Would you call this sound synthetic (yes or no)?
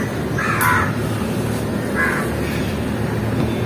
no